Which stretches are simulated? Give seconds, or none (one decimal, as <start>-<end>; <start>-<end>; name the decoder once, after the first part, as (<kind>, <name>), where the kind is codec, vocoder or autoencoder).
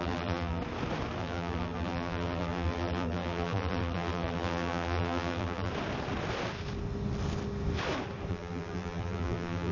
0.0-0.6 (vocoder, BigVGAN v2); 1.2-5.7; 8.3-9.7